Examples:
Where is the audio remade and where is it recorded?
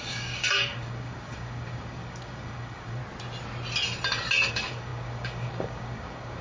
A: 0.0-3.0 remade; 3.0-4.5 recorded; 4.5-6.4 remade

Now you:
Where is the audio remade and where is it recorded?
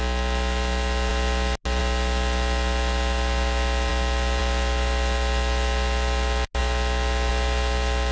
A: 0.0-8.1 recorded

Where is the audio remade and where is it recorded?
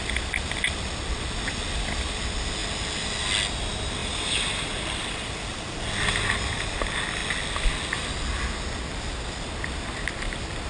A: 0.0-4.0 recorded; 4.0-5.3 remade; 5.3-10.7 recorded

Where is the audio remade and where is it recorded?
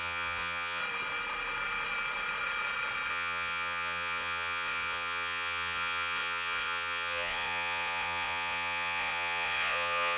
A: 0.0-0.8 remade; 0.8-3.1 recorded; 3.1-10.2 remade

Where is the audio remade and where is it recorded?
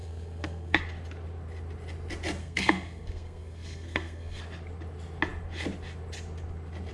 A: 0.0-0.8 remade; 0.8-2.4 recorded; 2.4-4.4 remade; 4.4-6.9 recorded